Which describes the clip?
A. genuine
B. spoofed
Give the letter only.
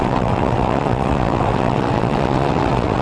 B